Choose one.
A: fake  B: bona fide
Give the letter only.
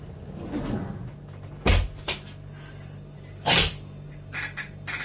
B